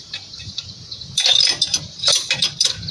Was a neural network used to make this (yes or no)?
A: yes